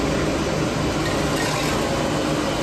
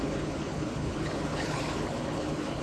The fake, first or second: second